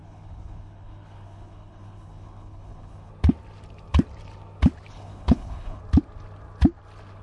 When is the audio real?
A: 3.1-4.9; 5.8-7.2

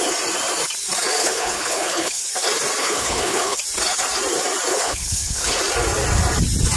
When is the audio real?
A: 0.0-1.2; 2.3-2.8; 3.6-4.7; 5.6-6.8

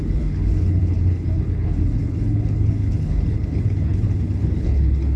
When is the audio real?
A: none

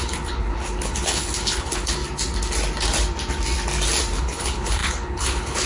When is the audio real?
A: 2.0-4.2

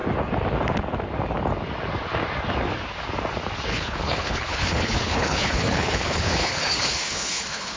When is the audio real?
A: 0.0-3.7